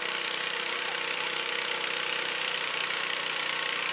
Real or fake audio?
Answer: fake